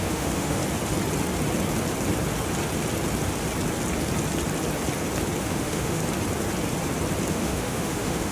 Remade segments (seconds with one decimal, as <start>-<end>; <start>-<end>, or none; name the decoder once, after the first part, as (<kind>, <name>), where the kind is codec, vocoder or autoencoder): 0.0-0.6 (autoencoder, DAC-VAE); 5.4-6.0; 7.3-8.3